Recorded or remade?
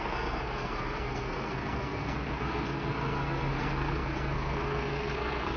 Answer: remade